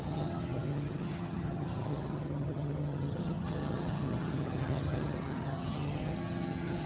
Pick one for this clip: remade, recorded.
remade